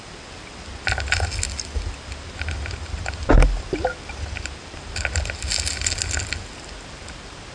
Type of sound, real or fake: real